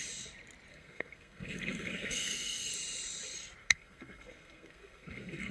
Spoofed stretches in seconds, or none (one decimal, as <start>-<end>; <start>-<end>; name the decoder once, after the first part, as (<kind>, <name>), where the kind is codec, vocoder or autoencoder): 0.7-2.7 (codec, SNAC); 3.6-5.5